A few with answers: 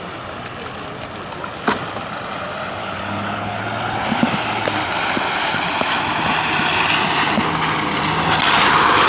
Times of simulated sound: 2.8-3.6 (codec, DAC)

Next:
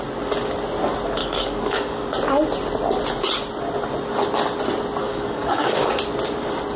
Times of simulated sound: 1.2-2.1 (codec, DAC); 5.0-5.9

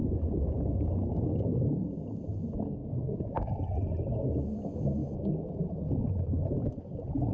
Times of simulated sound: 0.0-1.7 (codec, DAC); 2.8-3.5

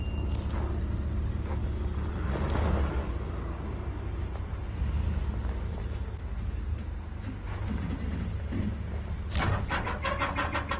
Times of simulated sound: 1.6-3.4 (codec, DAC)

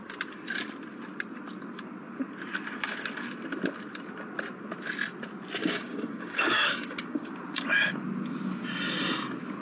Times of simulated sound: 5.6-7.3 (codec, DAC)

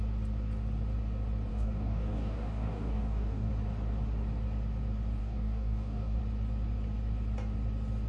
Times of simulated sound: 1.5-3.5 (codec, DAC); 5.2-6.2

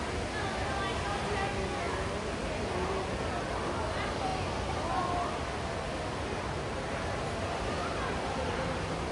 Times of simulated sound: none